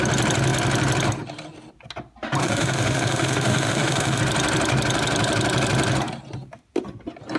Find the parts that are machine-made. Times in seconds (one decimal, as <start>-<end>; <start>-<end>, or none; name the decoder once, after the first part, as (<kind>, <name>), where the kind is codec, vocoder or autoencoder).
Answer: 2.4-4.2 (autoencoder, DAC-VAE)